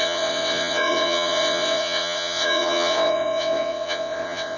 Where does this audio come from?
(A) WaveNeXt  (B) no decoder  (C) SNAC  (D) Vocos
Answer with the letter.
A